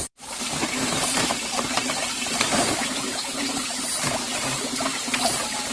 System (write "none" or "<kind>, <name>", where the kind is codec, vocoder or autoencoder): vocoder, BigVGAN v2